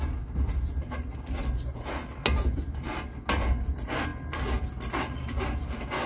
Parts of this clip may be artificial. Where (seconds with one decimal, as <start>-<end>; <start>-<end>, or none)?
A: none